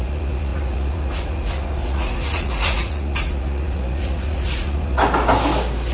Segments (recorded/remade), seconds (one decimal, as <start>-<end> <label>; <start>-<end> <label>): 0.0-5.0 remade; 5.0-5.9 recorded